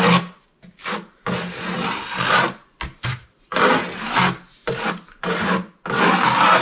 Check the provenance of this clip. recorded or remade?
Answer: recorded